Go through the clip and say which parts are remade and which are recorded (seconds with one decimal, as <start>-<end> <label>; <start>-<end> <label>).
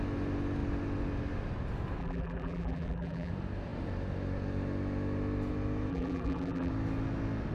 0.0-2.0 recorded; 2.0-3.3 remade; 3.3-5.9 recorded; 5.9-6.7 remade; 6.7-7.5 recorded